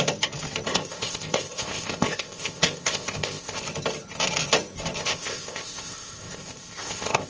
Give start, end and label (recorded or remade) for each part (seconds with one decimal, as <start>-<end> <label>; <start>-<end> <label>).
0.0-0.7 recorded; 0.7-3.6 remade; 3.6-5.0 recorded; 5.0-7.3 remade